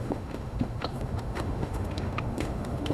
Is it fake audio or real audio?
fake